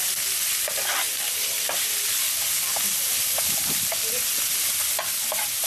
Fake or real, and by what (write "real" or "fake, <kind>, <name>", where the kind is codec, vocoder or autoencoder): fake, vocoder, BigVGAN v2